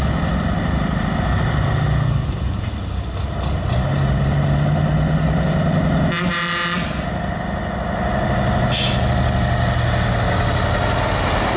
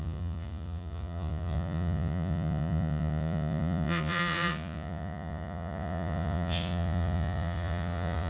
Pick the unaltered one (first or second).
first